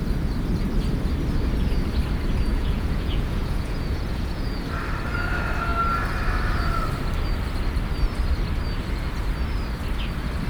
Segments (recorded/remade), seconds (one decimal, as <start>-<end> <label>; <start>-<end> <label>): 0.0-2.5 recorded; 2.5-4.6 remade; 4.6-10.5 recorded